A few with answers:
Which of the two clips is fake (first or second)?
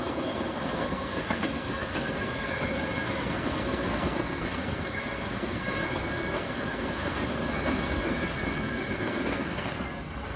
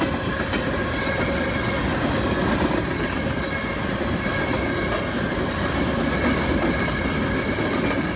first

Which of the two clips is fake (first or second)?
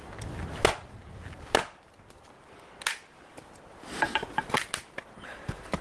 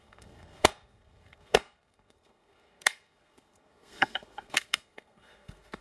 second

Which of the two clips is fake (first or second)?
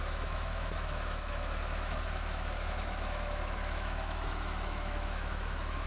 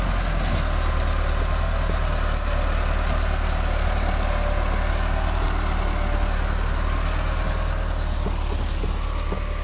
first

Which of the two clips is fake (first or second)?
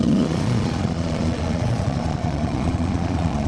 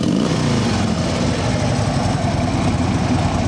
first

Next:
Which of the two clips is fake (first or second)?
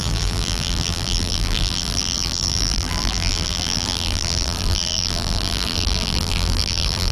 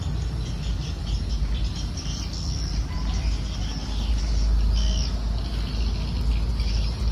first